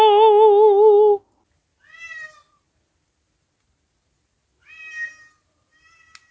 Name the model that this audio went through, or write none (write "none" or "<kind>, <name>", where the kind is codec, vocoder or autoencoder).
none